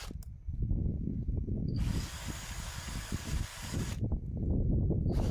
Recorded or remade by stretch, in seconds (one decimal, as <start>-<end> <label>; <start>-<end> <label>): 0.0-0.8 recorded; 0.8-4.0 remade; 4.0-5.3 recorded